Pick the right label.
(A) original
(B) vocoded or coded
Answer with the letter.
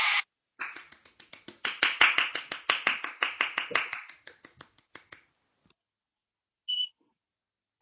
A